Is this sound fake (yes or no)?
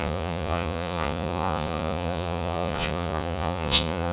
yes